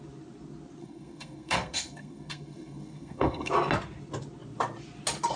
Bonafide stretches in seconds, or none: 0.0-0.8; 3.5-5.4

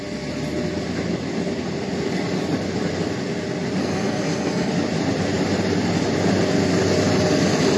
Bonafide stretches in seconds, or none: 0.0-3.8; 4.7-7.8

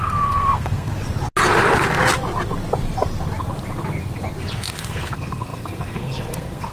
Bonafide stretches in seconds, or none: 0.9-4.6

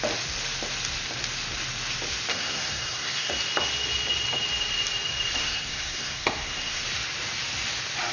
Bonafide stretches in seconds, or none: 0.0-2.3; 3.3-5.4; 6.8-8.1

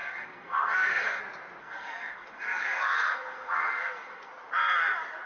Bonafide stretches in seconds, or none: 1.2-1.6; 4.3-5.3

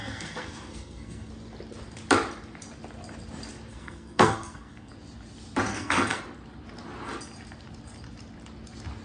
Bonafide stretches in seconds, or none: 1.3-3.7; 4.9-5.7; 6.2-9.0